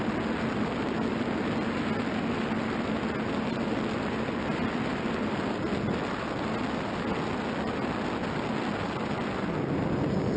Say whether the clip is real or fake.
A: real